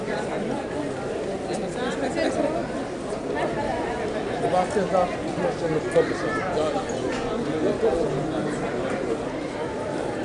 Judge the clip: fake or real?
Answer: real